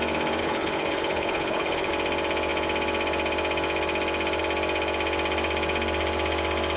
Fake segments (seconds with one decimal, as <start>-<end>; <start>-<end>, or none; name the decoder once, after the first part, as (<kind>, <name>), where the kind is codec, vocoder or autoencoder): 0.4-1.9 (codec, HILCodec)